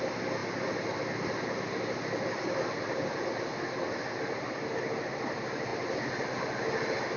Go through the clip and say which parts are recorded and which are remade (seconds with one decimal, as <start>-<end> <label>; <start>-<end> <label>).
0.0-7.2 recorded